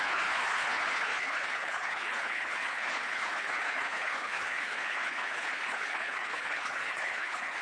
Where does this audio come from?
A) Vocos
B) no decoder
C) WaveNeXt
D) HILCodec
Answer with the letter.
D